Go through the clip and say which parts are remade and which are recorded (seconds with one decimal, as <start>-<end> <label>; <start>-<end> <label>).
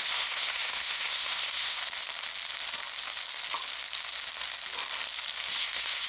0.0-1.8 remade; 1.8-5.5 recorded; 5.5-6.1 remade